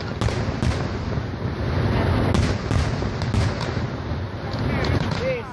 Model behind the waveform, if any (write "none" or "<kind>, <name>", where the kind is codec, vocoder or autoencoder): none